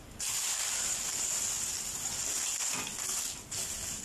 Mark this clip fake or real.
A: real